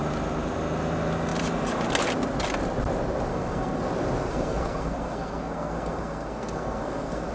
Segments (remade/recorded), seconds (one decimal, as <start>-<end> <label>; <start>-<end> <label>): 0.0-3.3 recorded; 3.3-3.8 remade; 3.8-4.2 recorded; 4.2-7.3 remade